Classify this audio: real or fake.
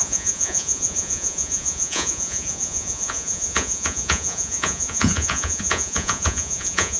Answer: fake